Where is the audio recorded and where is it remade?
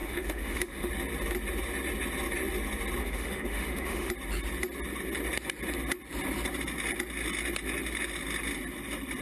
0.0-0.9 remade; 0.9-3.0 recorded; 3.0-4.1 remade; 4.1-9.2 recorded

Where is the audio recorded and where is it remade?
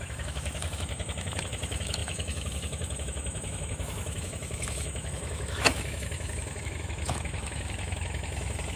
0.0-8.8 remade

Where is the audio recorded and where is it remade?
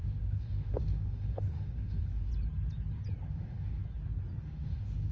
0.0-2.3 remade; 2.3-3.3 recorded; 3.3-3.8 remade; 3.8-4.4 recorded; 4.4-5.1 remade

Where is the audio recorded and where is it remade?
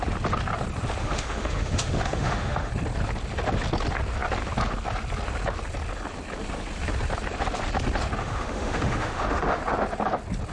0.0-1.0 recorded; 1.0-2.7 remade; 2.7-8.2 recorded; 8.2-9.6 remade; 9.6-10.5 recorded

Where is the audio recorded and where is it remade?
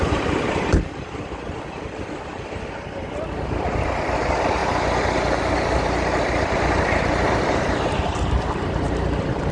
0.0-9.5 recorded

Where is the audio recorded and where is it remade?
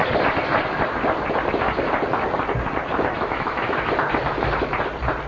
0.0-2.8 recorded; 2.8-3.9 remade; 3.9-5.3 recorded